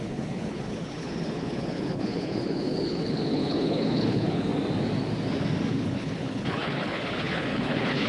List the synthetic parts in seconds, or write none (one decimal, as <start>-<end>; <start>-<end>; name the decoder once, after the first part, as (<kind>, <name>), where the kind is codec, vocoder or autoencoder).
0.0-4.5 (codec, HILCodec); 5.7-8.1